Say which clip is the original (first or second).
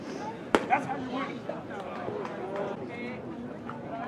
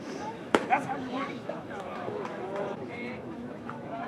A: first